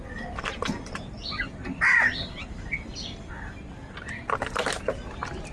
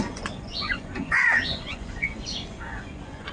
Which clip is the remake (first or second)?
second